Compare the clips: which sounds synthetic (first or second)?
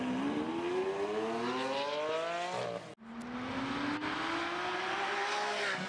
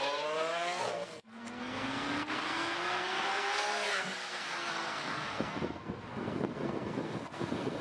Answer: second